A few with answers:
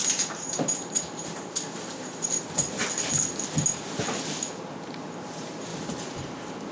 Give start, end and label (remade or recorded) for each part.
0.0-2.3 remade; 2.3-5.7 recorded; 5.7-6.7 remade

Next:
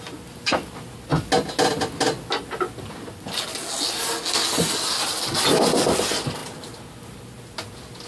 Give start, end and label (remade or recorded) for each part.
0.0-8.1 recorded

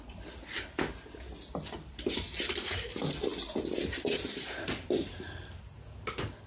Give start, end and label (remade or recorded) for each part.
0.0-6.5 recorded